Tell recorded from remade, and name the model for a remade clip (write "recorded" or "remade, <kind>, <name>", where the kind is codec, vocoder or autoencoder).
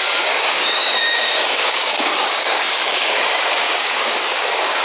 remade, codec, DAC